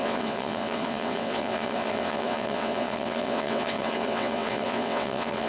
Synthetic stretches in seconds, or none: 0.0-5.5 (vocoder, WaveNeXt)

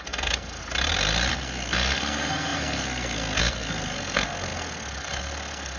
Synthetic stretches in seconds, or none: 0.0-0.6 (codec, SNAC); 1.3-5.8

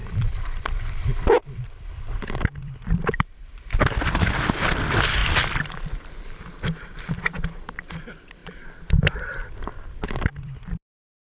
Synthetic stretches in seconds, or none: 0.0-5.2 (vocoder, BigVGAN v2); 6.2-11.2

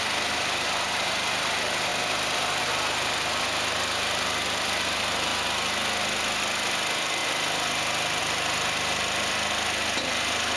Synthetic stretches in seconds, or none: 0.0-5.3 (vocoder, BigVGAN v2); 6.7-7.2; 8.2-10.6

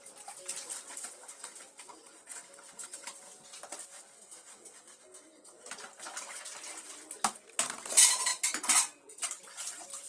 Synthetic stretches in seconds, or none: 0.0-3.1 (vocoder, BigVGAN v2); 7.9-10.1

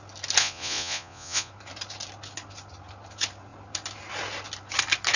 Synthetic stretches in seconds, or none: 0.4-1.5 (vocoder, Vocos)

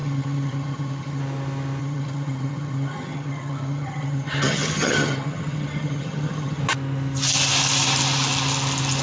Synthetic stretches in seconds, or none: 0.0-1.2 (vocoder, HiFi-GAN); 1.8-6.6